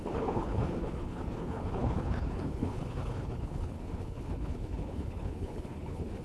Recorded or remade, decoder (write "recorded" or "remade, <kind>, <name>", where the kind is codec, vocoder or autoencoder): remade, codec, HILCodec